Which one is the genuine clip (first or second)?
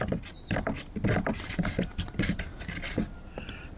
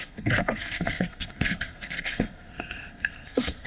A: first